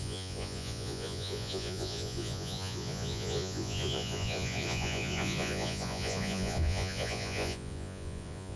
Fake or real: fake